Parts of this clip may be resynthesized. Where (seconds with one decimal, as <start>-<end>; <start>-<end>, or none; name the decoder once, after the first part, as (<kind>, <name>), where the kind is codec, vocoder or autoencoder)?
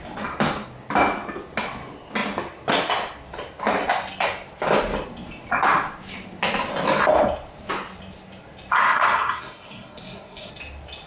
8.8-10.5 (codec, SNAC)